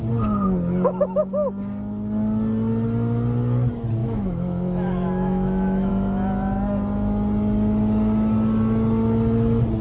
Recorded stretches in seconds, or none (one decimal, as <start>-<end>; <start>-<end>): 0.0-4.0; 5.9-9.8

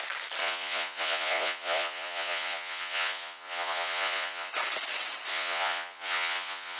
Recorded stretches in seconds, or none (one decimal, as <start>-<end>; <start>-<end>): 0.0-0.4; 4.5-5.3

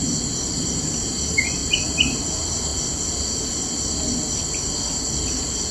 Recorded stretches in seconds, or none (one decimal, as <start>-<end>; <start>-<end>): 0.0-1.0; 1.6-2.3; 2.7-5.2

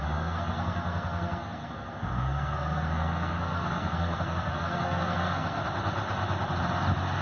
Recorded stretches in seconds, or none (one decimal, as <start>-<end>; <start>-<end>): 5.6-7.2

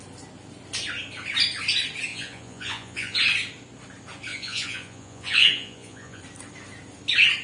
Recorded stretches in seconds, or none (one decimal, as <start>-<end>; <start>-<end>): 0.0-2.1; 3.2-4.3; 6.2-7.4